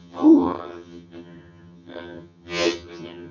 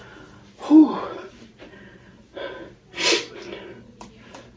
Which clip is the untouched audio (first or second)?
second